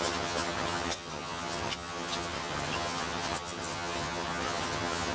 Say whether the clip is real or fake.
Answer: fake